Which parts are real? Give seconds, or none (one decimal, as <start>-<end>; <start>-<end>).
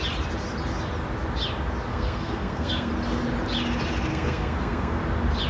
0.0-1.9; 2.9-4.1; 5.0-5.5